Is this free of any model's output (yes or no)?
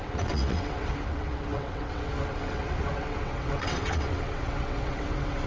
no